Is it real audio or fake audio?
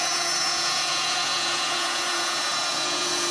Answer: fake